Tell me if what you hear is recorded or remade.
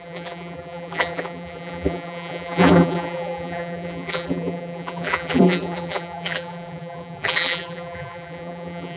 remade